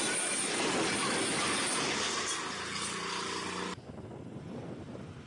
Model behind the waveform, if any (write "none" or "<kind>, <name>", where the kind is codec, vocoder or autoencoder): none